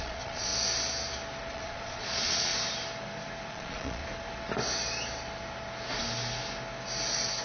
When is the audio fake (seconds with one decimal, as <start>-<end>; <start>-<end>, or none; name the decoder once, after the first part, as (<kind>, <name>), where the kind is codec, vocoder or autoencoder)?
0.0-0.5 (vocoder, Vocos); 1.5-2.5; 3.5-4.0